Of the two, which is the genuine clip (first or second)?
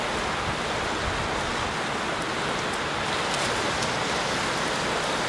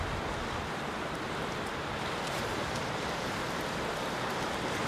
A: first